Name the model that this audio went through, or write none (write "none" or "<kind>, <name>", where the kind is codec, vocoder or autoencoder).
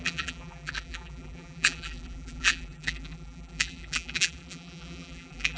vocoder, BigVGAN v2